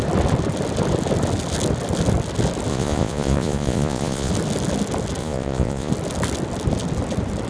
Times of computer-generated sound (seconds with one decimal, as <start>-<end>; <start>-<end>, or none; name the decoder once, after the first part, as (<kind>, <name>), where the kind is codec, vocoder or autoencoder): 2.7-4.3 (vocoder, Vocos); 5.2-5.9